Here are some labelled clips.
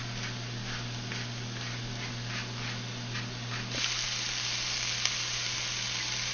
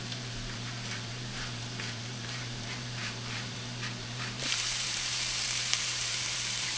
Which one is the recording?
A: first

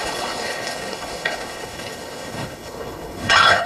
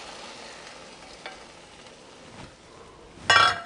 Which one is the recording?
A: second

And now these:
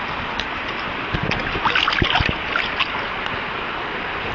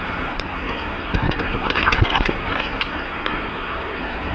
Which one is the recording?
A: first